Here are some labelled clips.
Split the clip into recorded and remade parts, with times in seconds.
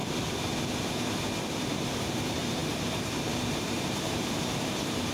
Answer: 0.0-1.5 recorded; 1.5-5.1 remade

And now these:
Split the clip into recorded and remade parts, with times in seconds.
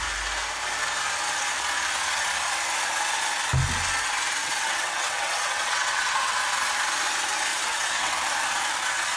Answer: 0.0-4.4 recorded; 4.4-6.4 remade; 6.4-7.5 recorded; 7.5-8.1 remade; 8.1-9.2 recorded